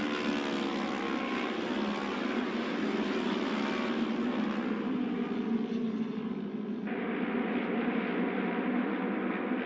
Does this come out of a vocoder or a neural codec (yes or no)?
no